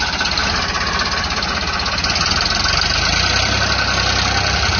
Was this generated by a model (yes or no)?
no